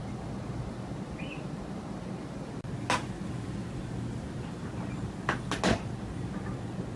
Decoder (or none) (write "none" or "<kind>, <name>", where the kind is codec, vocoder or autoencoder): none